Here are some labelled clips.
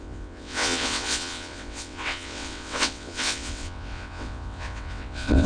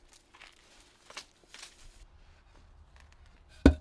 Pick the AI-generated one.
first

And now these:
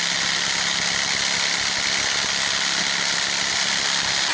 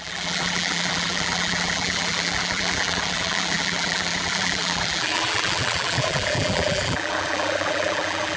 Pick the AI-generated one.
second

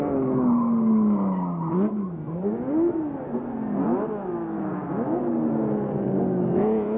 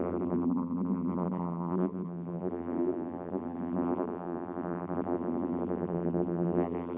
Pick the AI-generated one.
second